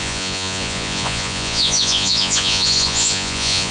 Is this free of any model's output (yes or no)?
no